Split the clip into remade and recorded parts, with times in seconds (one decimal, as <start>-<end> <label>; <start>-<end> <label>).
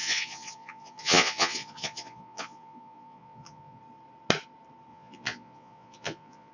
0.0-3.8 remade; 3.8-4.9 recorded; 4.9-6.5 remade